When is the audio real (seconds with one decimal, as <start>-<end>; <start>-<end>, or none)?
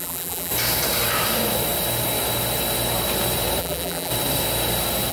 0.5-3.6; 4.1-5.1